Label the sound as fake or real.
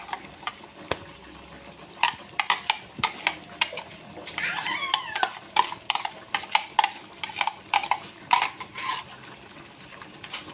real